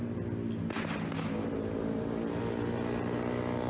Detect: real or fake real